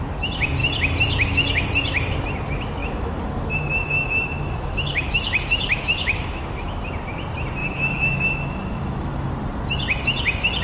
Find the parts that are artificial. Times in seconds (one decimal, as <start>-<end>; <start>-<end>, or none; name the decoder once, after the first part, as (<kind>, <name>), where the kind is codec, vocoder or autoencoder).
2.8-6.8 (autoencoder, DAC-VAE); 7.6-9.3